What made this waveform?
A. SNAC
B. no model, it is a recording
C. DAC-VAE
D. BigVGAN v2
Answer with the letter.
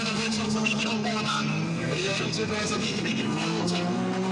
A